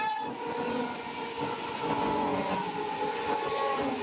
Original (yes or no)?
no